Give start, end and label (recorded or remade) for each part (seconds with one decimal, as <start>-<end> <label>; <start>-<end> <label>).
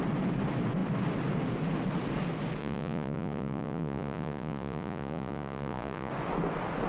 0.0-2.6 recorded; 2.6-6.1 remade; 6.1-6.9 recorded